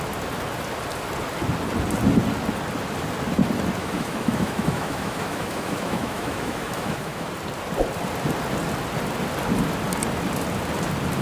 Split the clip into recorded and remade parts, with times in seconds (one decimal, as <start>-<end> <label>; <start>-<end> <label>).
0.0-3.8 recorded; 3.8-7.3 remade; 7.3-11.2 recorded